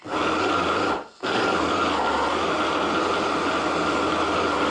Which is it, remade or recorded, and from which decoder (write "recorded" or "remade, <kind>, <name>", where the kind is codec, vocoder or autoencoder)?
recorded